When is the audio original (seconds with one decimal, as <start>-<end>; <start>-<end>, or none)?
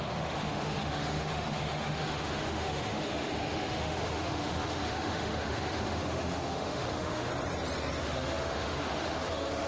7.3-8.0